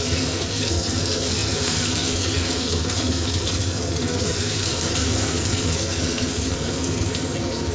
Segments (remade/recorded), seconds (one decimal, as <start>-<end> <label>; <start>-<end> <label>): 0.0-7.7 remade